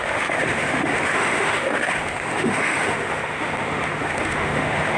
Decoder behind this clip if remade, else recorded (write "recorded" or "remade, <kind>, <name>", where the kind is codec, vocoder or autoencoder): remade, autoencoder, DAC-VAE